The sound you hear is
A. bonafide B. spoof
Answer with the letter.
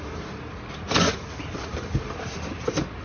A